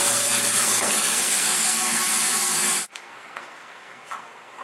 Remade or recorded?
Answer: remade